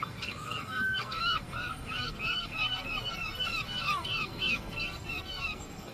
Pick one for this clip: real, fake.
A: fake